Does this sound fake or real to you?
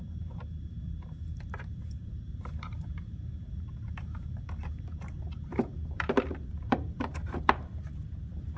fake